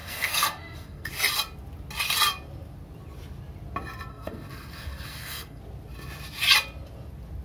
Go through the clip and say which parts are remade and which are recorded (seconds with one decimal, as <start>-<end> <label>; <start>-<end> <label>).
0.0-1.1 remade; 1.1-4.1 recorded; 4.1-5.6 remade; 5.6-7.4 recorded